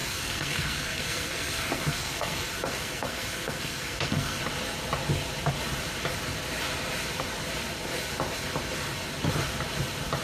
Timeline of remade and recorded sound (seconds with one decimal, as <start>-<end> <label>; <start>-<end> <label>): 0.0-4.4 remade; 4.4-10.2 recorded